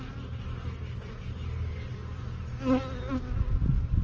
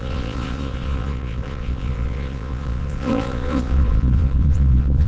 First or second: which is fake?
second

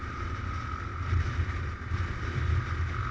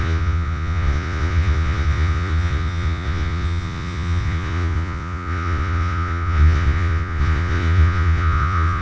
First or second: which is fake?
second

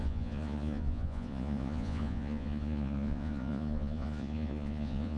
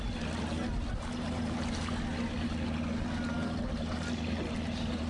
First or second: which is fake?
first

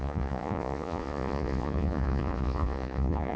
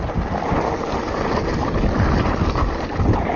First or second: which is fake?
first